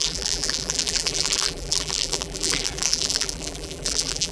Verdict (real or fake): fake